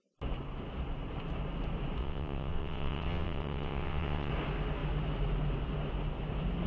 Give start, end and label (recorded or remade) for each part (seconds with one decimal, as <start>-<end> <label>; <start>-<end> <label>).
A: 0.0-2.0 recorded; 2.0-4.3 remade; 4.3-6.7 recorded